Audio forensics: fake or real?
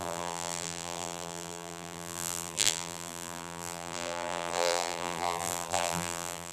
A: fake